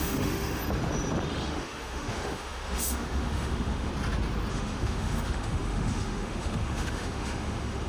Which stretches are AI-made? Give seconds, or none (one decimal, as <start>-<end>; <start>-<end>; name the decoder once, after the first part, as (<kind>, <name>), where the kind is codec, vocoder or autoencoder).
0.0-0.6 (autoencoder, DAC-VAE); 1.3-3.9; 4.5-7.9